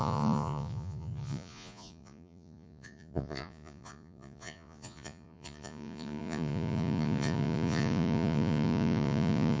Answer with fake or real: fake